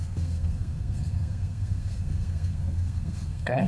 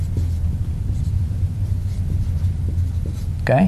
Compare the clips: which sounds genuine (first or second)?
second